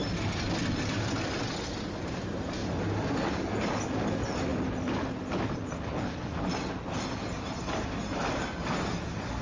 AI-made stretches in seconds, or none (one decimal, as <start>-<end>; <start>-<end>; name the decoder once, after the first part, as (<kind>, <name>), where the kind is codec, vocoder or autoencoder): none

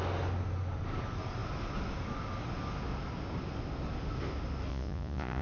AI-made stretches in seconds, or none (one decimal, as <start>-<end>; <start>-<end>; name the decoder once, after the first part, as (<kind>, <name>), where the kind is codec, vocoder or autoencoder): 4.7-5.4 (vocoder, Vocos)

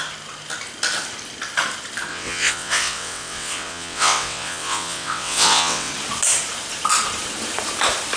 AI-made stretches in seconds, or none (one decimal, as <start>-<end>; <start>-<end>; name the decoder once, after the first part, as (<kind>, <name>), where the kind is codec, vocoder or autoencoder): 2.1-5.9 (vocoder, WaveNeXt)

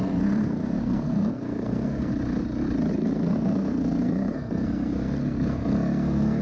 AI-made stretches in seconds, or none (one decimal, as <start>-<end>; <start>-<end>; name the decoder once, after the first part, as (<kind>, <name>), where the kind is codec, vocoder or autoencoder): 0.0-2.1 (codec, SNAC); 2.9-6.4

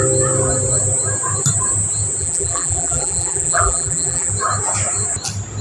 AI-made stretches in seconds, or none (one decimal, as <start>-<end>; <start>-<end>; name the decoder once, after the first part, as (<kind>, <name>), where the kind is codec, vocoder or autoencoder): 2.2-4.3 (vocoder, BigVGAN v2)

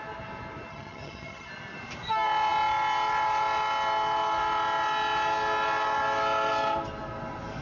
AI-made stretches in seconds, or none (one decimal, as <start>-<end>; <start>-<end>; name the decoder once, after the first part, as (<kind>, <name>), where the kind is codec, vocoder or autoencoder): 0.7-1.5 (vocoder, HiFi-GAN)